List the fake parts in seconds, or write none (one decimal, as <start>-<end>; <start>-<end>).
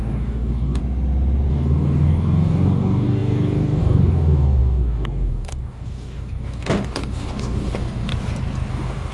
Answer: 0.0-0.8; 1.5-8.1; 8.7-9.1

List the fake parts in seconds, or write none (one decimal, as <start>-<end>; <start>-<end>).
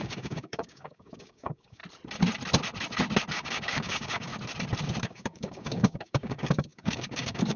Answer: 0.0-1.8; 3.3-4.3; 5.0-7.6